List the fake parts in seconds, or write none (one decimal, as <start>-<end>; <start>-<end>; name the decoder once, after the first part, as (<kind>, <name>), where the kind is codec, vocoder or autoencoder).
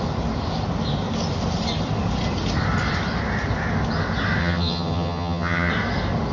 4.4-5.7 (vocoder, HiFi-GAN)